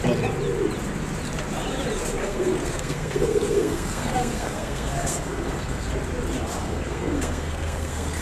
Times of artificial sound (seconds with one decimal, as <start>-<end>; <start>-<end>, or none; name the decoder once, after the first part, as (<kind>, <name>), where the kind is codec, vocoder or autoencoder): 2.2-5.9 (codec, SNAC); 6.6-8.2